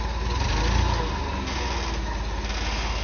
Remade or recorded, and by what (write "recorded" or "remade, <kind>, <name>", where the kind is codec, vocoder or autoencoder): recorded